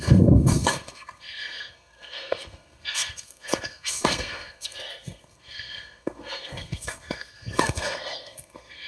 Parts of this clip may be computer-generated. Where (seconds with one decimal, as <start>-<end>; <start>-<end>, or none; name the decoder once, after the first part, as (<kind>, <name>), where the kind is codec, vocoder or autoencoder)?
0.0-8.9 (codec, SNAC)